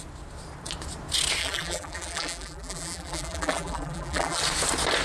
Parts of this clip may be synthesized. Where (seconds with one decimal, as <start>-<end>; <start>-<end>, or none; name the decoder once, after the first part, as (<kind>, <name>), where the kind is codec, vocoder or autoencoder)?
1.4-4.4 (vocoder, BigVGAN v2)